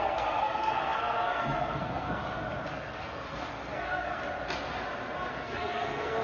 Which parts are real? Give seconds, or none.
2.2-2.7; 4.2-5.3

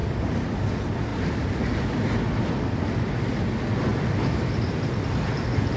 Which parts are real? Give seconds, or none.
0.5-1.1; 2.1-5.8

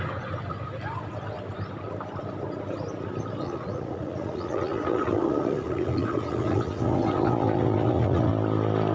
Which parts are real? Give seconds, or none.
0.0-3.4; 8.3-8.9